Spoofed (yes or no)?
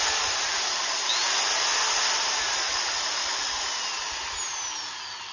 no